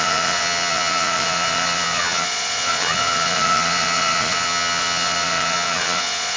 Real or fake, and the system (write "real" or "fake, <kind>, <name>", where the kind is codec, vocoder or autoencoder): fake, vocoder, Vocos